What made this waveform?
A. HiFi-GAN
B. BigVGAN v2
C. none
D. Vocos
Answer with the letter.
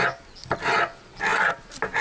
C